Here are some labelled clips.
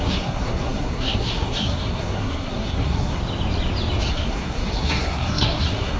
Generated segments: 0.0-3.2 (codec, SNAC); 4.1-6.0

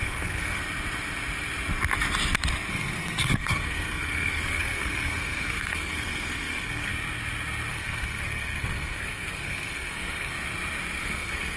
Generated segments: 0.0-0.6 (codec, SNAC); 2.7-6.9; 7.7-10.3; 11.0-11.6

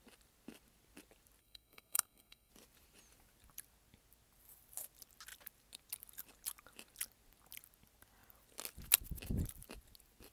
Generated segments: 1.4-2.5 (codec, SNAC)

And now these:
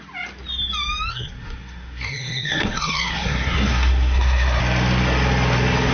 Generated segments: 1.1-4.6 (codec, SNAC)

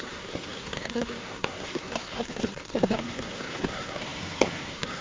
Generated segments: 0.0-5.0 (codec, SNAC)